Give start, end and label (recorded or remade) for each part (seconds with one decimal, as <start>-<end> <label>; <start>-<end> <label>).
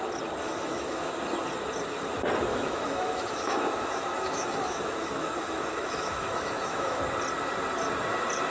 0.0-0.4 recorded; 0.4-1.1 remade; 1.1-2.5 recorded; 2.5-7.0 remade; 7.0-8.5 recorded